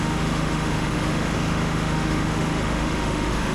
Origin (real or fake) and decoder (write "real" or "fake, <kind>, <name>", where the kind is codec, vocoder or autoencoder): fake, autoencoder, DAC-VAE